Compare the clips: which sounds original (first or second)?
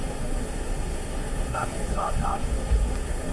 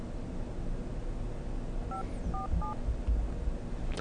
second